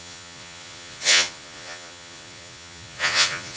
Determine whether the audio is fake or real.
fake